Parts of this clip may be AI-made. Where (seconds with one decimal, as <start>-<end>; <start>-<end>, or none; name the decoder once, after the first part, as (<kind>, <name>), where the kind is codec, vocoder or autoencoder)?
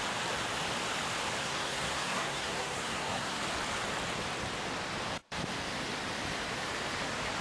1.4-3.4 (codec, SNAC)